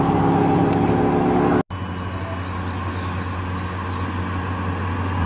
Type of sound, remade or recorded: recorded